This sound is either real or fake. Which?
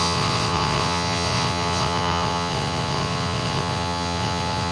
fake